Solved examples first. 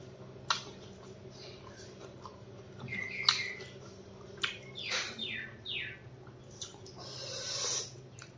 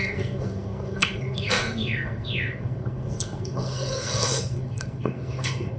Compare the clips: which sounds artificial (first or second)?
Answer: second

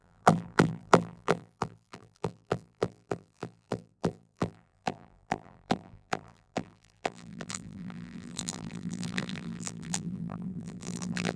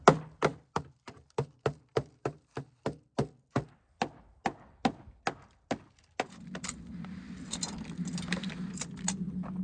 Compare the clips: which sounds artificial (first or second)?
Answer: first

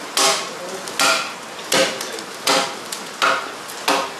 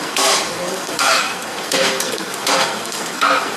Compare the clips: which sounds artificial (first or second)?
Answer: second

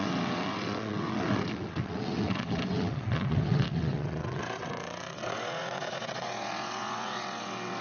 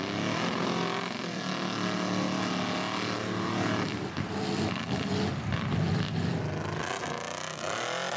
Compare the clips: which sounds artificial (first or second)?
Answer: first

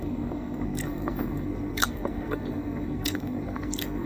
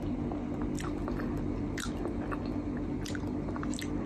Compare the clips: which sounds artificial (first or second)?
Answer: first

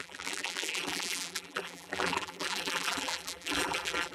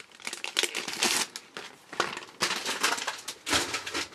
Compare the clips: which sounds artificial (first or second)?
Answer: first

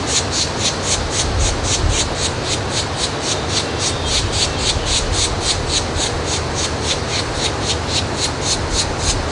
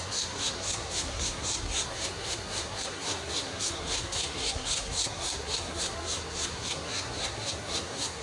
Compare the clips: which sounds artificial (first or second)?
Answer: second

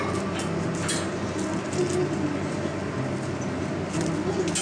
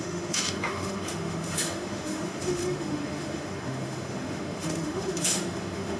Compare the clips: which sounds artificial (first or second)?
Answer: second